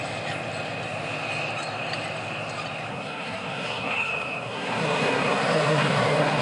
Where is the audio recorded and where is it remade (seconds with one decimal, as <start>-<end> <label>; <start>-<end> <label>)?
0.0-2.9 recorded; 2.9-6.4 remade